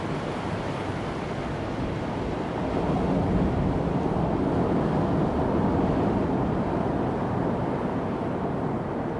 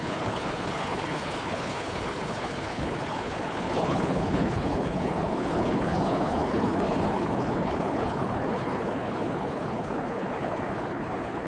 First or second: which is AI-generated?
second